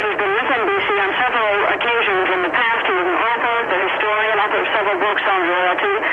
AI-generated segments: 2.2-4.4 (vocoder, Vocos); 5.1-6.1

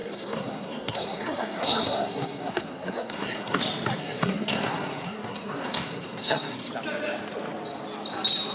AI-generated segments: 0.0-3.6 (codec, SNAC); 4.0-6.7

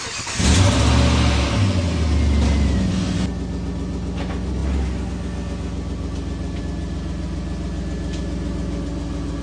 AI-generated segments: none

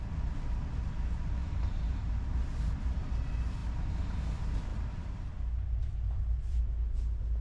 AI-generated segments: 1.4-3.1 (vocoder, BigVGAN v2); 4.7-5.3; 5.8-6.6